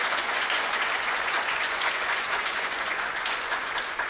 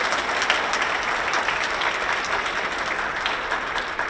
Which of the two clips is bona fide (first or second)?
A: second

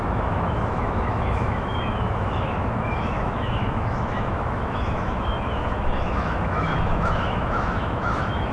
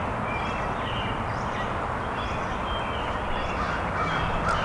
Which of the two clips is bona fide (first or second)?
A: second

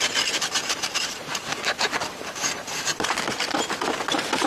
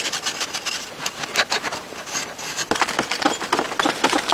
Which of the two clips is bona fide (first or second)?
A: second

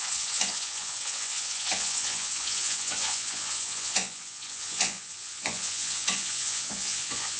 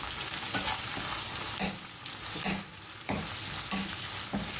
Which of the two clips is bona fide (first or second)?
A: second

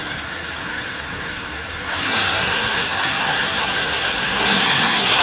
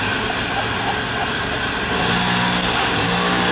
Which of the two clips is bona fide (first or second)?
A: second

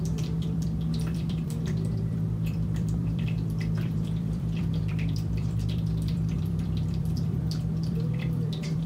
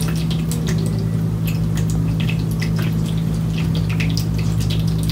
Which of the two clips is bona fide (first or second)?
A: second